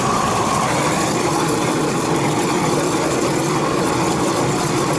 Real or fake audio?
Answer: real